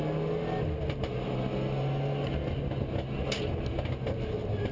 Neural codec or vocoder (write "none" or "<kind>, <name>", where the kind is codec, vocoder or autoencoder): none